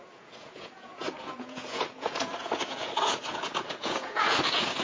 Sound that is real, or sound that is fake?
fake